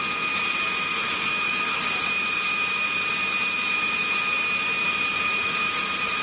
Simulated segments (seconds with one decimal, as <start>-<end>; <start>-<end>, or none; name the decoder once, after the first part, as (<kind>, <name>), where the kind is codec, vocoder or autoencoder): 0.9-1.8 (autoencoder, DAC-VAE)